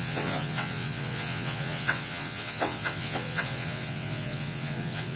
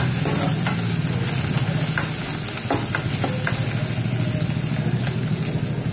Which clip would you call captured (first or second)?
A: second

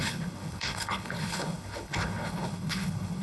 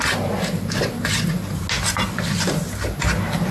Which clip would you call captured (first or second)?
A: second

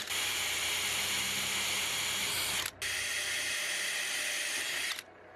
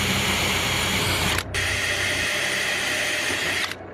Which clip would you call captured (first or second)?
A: first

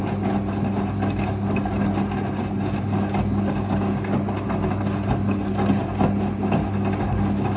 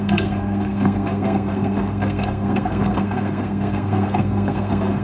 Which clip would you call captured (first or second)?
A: first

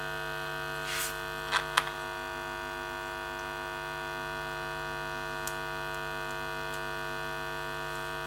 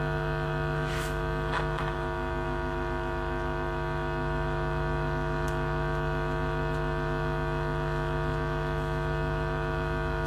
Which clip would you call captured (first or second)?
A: first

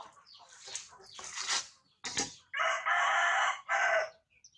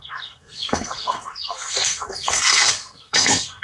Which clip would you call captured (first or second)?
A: first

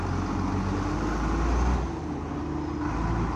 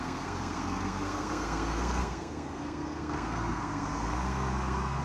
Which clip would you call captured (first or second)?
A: first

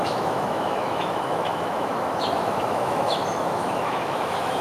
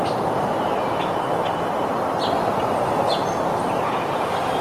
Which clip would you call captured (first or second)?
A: second